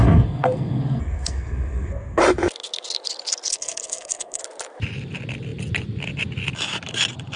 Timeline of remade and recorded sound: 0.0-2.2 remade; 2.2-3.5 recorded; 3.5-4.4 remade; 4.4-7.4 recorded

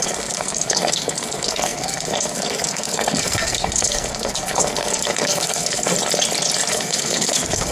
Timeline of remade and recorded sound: 0.0-5.9 remade; 5.9-6.7 recorded; 6.7-7.7 remade

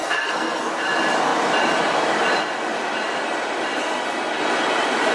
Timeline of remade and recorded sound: 0.0-0.7 remade; 0.7-5.1 recorded

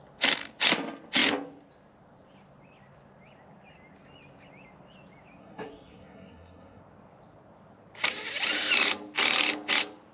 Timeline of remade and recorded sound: 0.0-5.4 recorded; 5.4-6.8 remade; 6.8-10.1 recorded

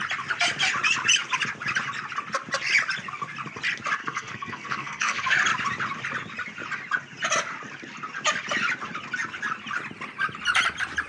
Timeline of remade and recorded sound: 0.0-4.0 recorded; 4.0-5.2 remade; 5.2-11.1 recorded